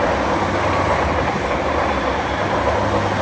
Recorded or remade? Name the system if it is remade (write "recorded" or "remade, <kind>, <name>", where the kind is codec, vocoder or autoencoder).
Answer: recorded